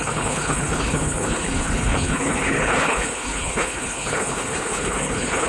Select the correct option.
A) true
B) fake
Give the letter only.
B